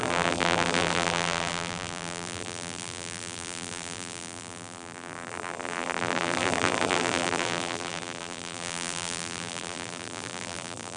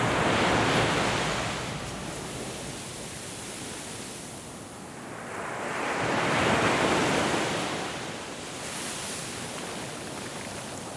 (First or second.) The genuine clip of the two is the second